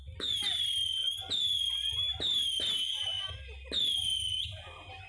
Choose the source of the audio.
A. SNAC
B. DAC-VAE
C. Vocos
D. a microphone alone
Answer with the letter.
D